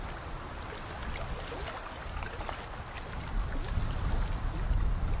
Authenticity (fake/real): real